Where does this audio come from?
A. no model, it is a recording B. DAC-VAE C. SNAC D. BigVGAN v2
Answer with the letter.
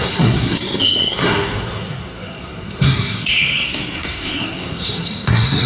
C